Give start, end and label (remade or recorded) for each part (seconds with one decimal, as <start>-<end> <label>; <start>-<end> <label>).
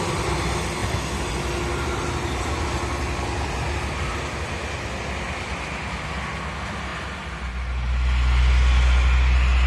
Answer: 0.0-9.7 recorded